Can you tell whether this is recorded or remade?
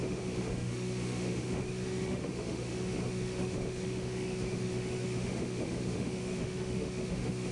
remade